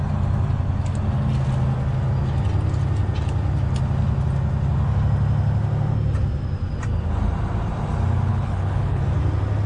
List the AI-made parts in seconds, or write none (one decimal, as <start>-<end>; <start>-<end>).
8.3-9.0